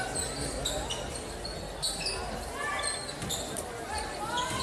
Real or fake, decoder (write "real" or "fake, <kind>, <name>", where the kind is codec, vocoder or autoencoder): real